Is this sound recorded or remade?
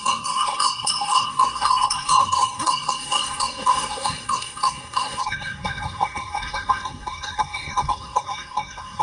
remade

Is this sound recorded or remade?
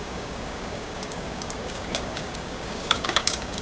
remade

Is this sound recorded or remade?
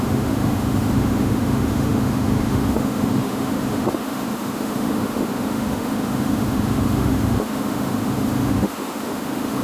remade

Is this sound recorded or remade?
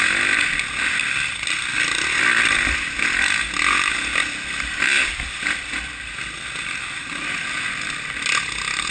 recorded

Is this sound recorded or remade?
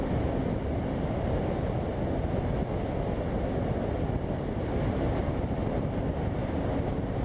recorded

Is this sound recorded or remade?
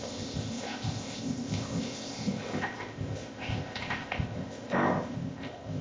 remade